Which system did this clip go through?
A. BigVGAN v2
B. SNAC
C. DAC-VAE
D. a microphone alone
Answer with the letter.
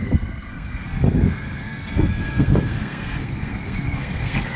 B